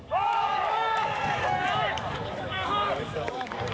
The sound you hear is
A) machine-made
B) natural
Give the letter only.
A